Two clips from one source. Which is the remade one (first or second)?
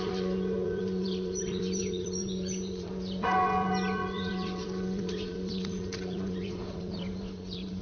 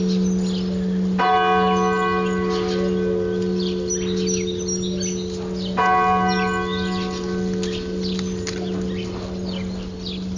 first